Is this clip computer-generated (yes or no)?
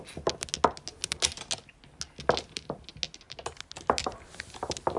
no